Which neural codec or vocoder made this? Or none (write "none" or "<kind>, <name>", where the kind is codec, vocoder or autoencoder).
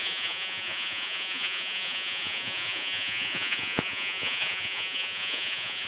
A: vocoder, Vocos